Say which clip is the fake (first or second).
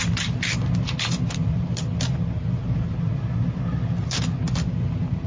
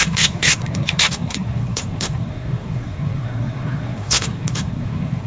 second